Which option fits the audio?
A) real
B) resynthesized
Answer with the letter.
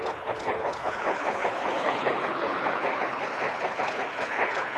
B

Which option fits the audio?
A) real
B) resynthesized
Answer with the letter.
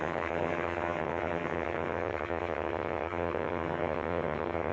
B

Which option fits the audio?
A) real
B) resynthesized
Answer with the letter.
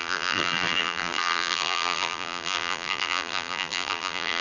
B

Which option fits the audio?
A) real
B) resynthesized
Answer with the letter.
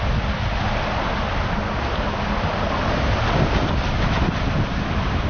A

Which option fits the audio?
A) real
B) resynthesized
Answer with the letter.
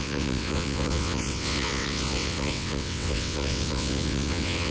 B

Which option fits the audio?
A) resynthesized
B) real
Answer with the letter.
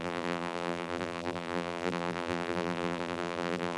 A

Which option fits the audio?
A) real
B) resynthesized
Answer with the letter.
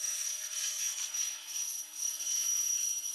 B